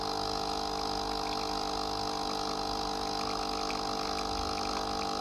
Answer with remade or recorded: recorded